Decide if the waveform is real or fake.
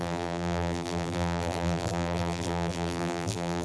fake